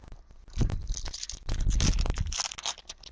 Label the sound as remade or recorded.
recorded